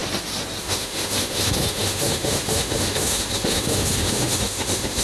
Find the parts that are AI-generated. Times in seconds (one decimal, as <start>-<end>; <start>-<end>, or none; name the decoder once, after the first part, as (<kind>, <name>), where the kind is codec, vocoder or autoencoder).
0.6-5.0 (autoencoder, DAC-VAE)